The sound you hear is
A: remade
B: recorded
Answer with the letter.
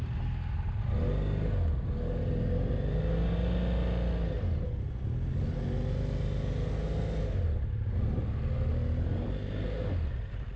B